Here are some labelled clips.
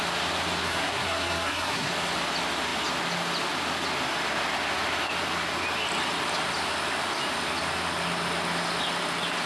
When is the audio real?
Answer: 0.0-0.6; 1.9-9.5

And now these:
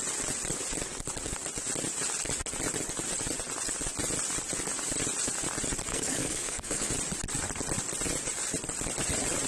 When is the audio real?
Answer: 0.0-5.9; 6.9-9.5

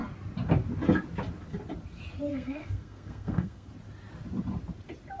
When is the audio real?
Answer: 0.0-2.3; 3.7-5.2